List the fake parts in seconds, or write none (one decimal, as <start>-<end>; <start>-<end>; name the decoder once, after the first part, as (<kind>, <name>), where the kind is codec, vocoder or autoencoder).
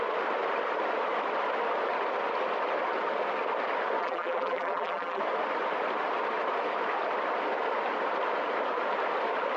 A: 4.0-5.2 (vocoder, BigVGAN v2)